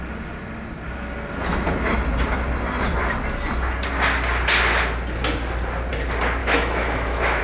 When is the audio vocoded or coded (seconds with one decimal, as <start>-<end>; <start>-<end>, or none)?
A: 6.4-7.4